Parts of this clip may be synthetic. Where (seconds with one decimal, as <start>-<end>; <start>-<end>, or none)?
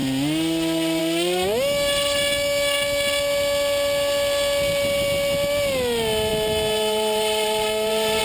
6.3-8.2